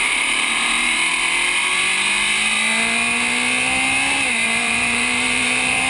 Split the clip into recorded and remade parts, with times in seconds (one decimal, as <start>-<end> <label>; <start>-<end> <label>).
0.0-1.1 remade; 1.1-4.6 recorded; 4.6-5.9 remade

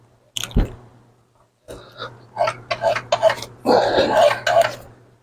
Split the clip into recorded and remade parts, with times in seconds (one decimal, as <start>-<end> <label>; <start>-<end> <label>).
0.0-5.2 recorded

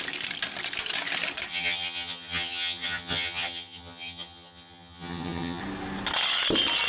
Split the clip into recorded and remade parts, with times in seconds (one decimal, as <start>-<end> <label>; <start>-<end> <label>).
0.0-1.5 recorded; 1.5-5.6 remade; 5.6-6.9 recorded